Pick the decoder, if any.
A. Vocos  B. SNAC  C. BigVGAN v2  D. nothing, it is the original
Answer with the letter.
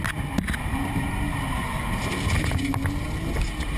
D